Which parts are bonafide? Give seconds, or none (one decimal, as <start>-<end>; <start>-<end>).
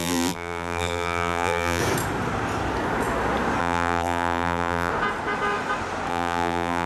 1.8-3.6; 4.9-6.1